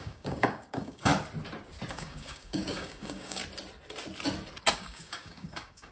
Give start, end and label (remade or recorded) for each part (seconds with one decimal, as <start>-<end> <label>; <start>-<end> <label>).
0.0-1.1 remade; 1.1-1.9 recorded; 1.9-3.4 remade; 3.4-4.7 recorded; 4.7-5.9 remade